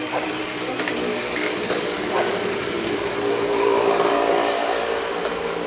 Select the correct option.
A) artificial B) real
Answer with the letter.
A